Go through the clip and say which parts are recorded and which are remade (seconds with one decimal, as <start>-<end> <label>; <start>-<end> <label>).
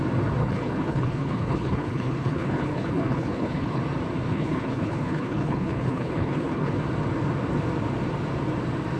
0.0-0.4 recorded; 0.4-3.8 remade; 3.8-4.3 recorded; 4.3-6.7 remade; 6.7-9.0 recorded